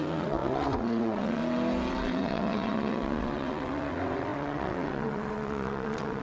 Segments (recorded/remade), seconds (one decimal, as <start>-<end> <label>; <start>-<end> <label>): 0.0-1.4 remade; 1.4-1.9 recorded; 1.9-6.2 remade